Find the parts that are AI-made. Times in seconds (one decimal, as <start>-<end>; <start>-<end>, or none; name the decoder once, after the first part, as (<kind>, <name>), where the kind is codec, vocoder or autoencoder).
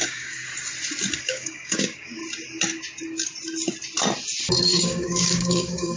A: 0.0-0.5 (codec, DAC); 1.2-2.2; 4.6-6.0